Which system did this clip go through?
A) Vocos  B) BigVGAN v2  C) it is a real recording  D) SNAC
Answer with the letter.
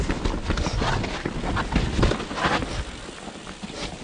C